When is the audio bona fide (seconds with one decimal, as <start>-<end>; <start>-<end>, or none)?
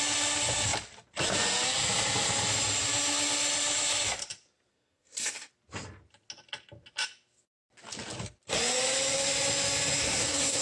0.0-4.7; 5.5-10.0